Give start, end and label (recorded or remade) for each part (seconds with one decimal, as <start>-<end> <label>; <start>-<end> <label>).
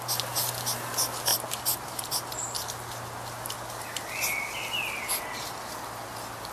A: 0.0-6.5 recorded